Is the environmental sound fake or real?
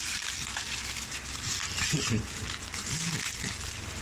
real